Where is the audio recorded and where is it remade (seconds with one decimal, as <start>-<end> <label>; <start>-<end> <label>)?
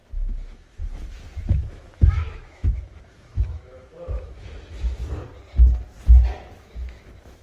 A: 0.0-5.0 remade; 5.0-6.6 recorded; 6.6-7.4 remade